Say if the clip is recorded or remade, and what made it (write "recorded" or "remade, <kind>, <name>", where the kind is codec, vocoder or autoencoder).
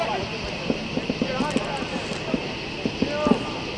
recorded